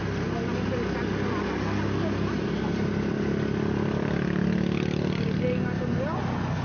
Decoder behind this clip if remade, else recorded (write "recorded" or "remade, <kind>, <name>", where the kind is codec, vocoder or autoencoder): recorded